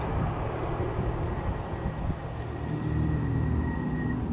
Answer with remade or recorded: recorded